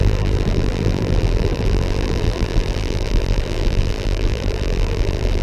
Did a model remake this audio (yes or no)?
yes